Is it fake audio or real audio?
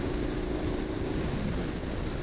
real